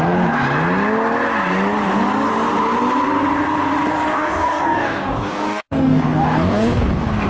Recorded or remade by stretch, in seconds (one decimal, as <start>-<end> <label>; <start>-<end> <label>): 0.0-4.1 recorded; 4.1-7.3 remade